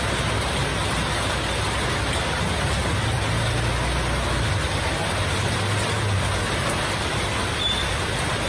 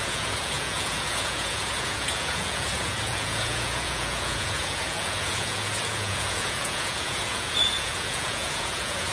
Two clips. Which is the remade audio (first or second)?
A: second